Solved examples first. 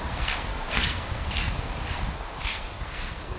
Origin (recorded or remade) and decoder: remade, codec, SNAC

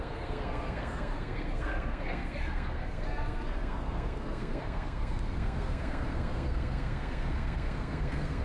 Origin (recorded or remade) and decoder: remade, codec, SNAC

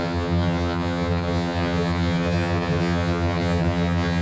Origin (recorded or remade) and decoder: remade, vocoder, HiFi-GAN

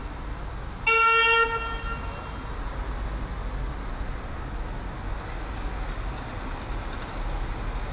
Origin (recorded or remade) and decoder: recorded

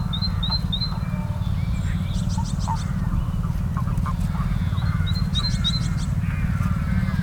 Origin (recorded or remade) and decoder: recorded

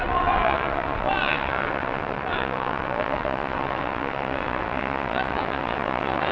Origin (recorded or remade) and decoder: remade, vocoder, WaveNeXt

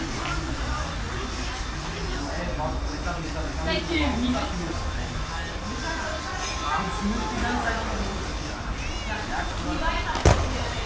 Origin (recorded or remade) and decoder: recorded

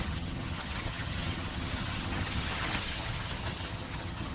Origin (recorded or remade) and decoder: remade, vocoder, HiFi-GAN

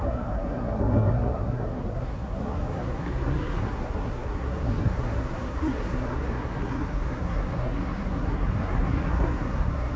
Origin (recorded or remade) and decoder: remade, codec, SNAC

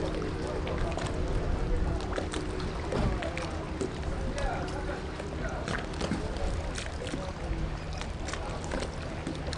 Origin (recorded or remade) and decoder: recorded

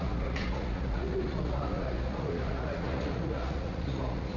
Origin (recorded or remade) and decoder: remade, vocoder, Vocos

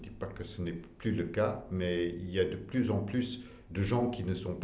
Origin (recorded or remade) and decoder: recorded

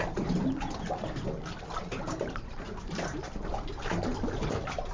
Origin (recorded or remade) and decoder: recorded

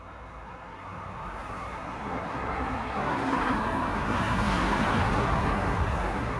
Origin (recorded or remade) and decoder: remade, codec, SNAC